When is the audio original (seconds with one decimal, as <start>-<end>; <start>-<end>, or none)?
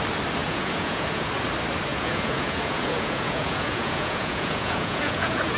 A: 0.0-0.4; 1.3-1.9